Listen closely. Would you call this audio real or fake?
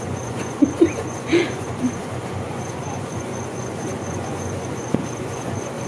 fake